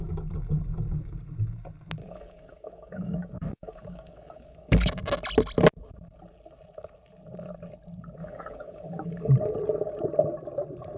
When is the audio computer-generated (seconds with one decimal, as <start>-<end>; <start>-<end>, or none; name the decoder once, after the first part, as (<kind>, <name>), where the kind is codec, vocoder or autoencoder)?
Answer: 2.0-4.9 (codec, DAC); 8.2-9.3